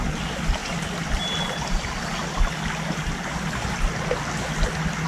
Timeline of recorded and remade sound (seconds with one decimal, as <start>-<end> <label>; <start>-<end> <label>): 0.0-5.1 recorded